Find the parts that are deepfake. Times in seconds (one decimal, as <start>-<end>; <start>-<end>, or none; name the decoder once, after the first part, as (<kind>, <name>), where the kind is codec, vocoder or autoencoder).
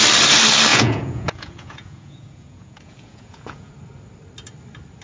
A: 0.7-3.7 (vocoder, Vocos)